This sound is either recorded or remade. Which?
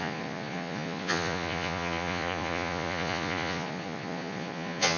remade